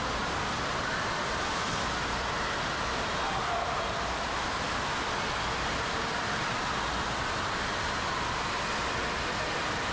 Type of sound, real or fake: real